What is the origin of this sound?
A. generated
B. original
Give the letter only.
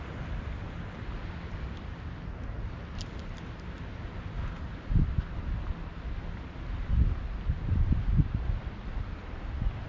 B